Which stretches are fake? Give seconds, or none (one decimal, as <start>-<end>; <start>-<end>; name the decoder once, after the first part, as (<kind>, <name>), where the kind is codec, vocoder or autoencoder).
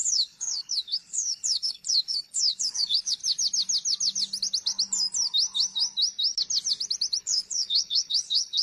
0.0-3.2 (codec, HILCodec); 7.2-8.6